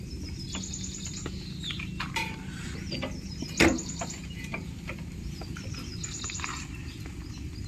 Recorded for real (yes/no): yes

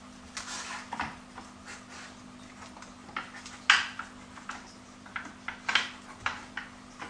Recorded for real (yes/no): yes